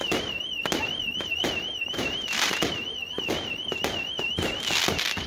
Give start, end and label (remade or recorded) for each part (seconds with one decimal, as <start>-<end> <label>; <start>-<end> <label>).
0.0-1.7 recorded; 1.7-2.8 remade; 2.8-5.3 recorded